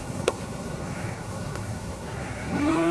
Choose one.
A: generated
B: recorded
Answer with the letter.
A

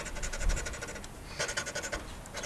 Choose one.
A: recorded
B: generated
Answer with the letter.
A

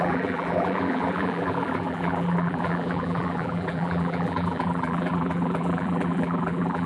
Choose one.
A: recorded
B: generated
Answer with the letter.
B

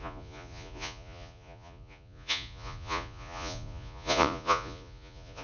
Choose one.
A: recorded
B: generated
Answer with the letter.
B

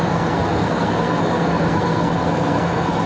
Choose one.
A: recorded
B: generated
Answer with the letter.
B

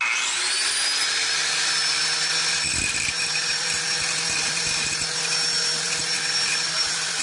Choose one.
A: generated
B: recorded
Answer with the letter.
B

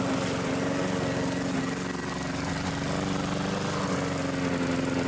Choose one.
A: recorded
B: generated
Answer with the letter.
A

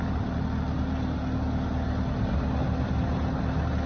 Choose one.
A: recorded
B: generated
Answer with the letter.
A